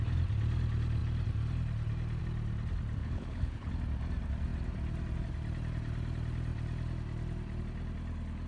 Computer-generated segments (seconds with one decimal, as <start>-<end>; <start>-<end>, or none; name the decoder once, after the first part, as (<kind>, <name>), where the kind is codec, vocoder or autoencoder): 3.0-3.7 (codec, HILCodec)